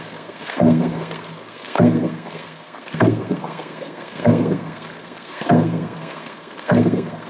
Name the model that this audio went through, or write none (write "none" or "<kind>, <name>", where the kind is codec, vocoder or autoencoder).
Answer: codec, SNAC